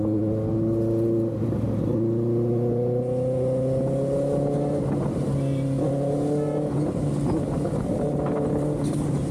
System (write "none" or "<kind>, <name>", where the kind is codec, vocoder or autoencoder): none